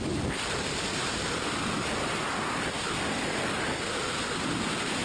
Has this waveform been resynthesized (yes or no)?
no